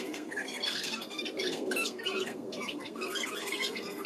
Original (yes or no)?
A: no